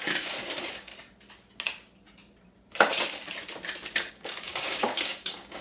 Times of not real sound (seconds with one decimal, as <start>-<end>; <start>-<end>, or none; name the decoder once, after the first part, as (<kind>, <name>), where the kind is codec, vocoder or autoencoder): 0.0-0.9 (codec, DAC); 4.1-5.6